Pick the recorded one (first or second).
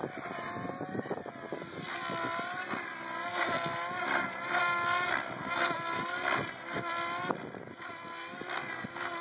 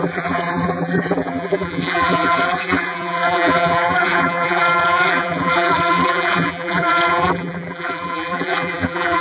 first